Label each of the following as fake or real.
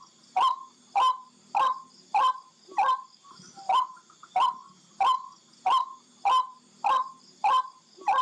real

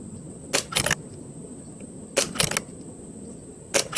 real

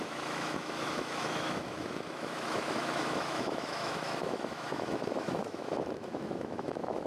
fake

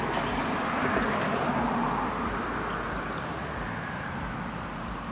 real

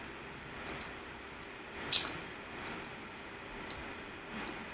real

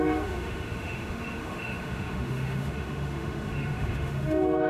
fake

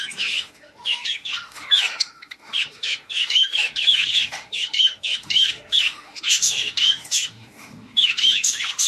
fake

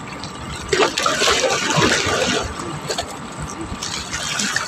real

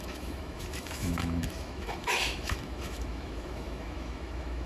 fake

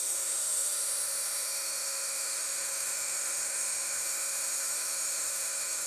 fake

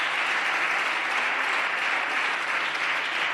real